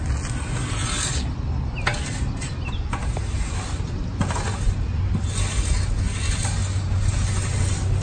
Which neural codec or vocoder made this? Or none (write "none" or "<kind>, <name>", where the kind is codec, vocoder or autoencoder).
none